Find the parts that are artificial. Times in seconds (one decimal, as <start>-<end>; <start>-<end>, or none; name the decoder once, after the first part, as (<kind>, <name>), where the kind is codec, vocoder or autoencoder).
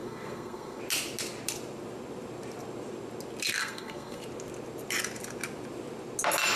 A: 0.0-0.8 (codec, SNAC); 3.6-4.2